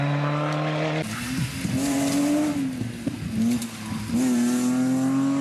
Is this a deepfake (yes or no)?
no